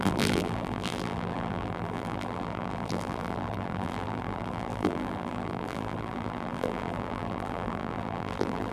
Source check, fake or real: fake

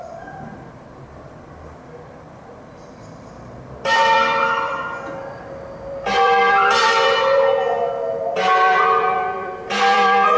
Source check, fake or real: fake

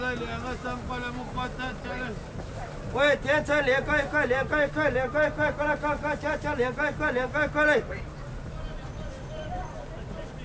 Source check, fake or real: real